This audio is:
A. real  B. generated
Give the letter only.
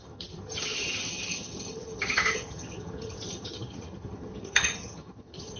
B